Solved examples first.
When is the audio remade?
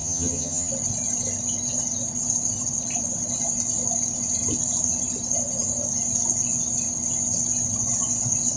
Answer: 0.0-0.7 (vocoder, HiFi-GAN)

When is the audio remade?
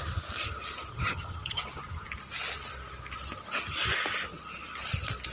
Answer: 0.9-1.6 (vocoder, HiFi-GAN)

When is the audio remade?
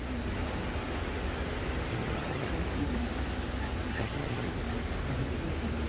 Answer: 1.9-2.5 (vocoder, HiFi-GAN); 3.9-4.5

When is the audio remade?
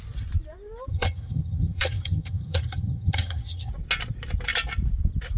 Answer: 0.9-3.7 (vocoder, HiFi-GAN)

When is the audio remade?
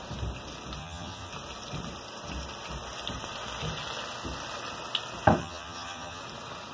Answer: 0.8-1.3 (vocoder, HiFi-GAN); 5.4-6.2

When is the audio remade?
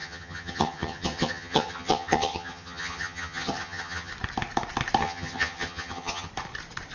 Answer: 0.0-4.1 (vocoder, HiFi-GAN); 5.0-6.3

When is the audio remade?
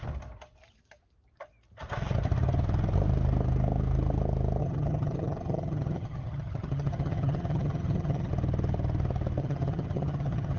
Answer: 4.6-8.3 (vocoder, HiFi-GAN); 9.4-10.6